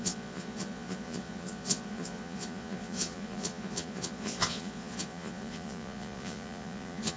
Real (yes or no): no